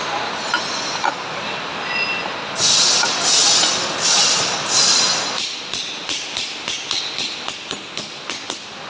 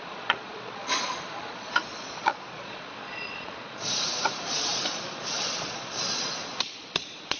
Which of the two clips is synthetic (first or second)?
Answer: second